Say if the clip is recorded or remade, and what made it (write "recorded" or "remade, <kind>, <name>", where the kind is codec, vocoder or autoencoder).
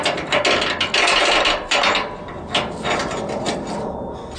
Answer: recorded